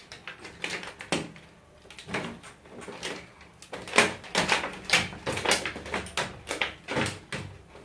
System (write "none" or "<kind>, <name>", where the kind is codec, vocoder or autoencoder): none